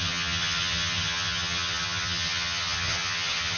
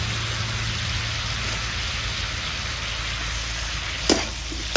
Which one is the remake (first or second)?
first